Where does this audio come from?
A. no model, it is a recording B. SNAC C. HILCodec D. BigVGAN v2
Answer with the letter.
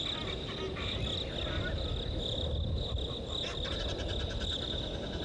A